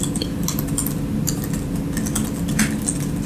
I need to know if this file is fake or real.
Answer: real